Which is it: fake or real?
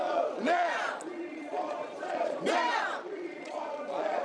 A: fake